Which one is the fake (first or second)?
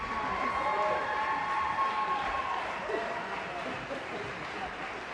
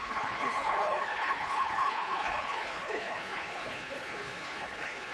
second